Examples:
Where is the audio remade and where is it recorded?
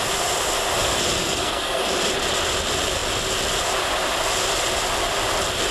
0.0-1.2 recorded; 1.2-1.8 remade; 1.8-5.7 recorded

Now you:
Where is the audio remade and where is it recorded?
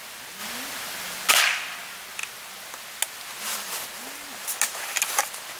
0.0-5.6 recorded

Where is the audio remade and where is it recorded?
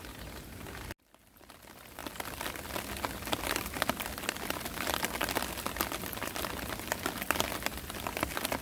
0.0-8.6 recorded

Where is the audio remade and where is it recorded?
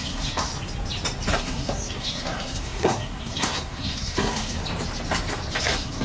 0.0-0.5 remade; 0.5-1.3 recorded; 1.3-4.6 remade; 4.6-5.6 recorded; 5.6-6.0 remade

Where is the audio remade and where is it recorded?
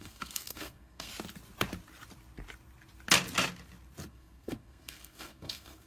0.0-1.1 remade; 1.1-4.1 recorded; 4.1-5.9 remade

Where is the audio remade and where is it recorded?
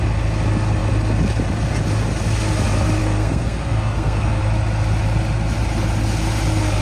0.0-3.0 recorded; 3.0-4.4 remade; 4.4-6.8 recorded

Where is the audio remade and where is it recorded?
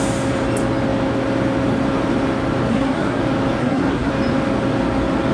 0.0-2.7 recorded; 2.7-3.2 remade; 3.2-3.6 recorded; 3.6-4.1 remade; 4.1-5.3 recorded